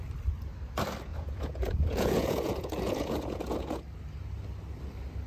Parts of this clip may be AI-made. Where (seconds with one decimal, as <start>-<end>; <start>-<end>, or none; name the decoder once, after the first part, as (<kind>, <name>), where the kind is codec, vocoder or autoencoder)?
1.1-3.8 (vocoder, Vocos)